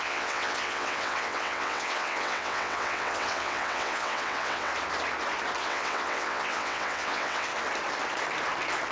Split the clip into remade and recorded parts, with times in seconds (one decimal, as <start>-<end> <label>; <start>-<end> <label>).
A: 0.0-4.7 remade; 4.7-5.6 recorded; 5.6-7.5 remade; 7.5-8.9 recorded